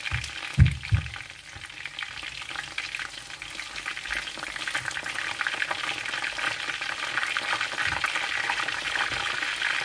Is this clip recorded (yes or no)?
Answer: yes